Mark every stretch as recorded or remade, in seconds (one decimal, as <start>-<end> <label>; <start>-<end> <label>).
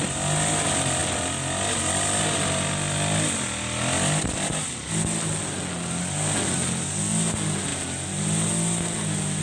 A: 0.0-9.4 recorded